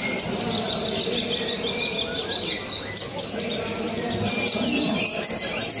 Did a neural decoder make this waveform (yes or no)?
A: no